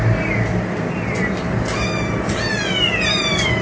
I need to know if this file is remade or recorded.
recorded